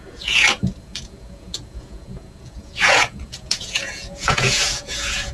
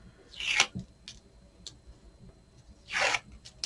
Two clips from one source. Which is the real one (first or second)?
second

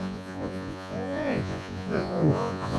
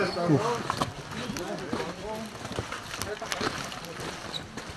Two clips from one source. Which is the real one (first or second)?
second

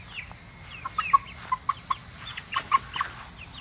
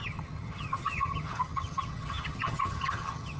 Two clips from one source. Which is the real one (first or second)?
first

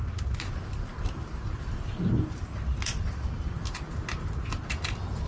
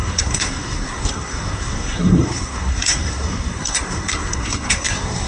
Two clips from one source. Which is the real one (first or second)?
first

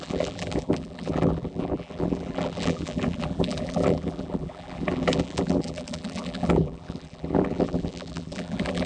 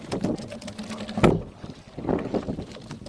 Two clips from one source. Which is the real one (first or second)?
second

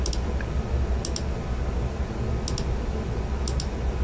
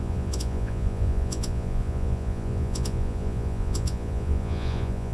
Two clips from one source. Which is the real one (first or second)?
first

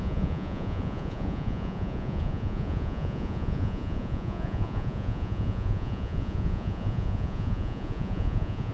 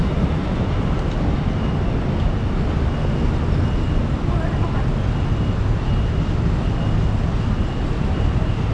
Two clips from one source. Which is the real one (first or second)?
second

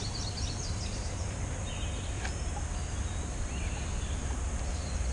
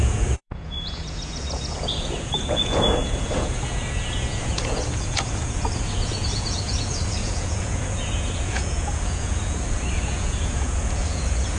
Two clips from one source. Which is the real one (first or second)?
first